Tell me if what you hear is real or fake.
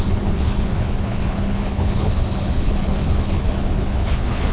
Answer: fake